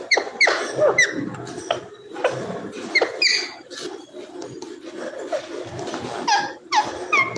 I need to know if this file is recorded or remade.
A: recorded